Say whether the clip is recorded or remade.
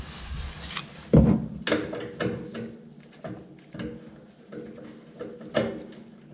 recorded